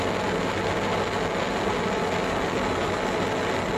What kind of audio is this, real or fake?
real